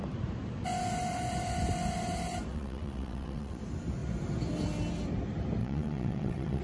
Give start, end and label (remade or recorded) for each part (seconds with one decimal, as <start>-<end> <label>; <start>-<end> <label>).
0.0-2.5 recorded; 2.5-3.6 remade; 3.6-5.6 recorded; 5.6-6.6 remade